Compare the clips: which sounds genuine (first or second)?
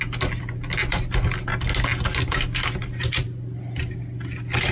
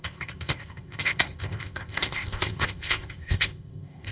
first